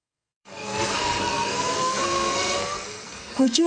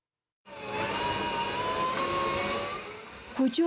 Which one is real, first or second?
second